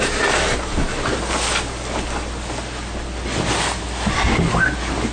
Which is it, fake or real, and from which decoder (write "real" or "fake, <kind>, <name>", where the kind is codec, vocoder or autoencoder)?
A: real